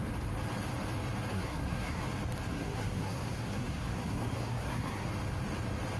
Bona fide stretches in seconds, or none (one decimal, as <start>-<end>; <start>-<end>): 0.0-1.3; 2.0-2.5; 5.1-6.0